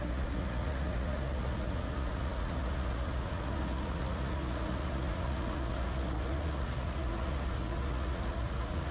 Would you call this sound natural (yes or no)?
no